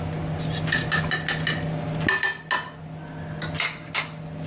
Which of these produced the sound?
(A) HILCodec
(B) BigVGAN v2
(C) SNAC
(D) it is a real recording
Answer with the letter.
D